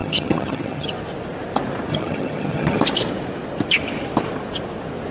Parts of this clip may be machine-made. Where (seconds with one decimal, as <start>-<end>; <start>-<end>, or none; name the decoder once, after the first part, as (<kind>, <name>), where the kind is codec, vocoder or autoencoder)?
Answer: 0.0-0.9 (vocoder, HiFi-GAN); 1.9-2.8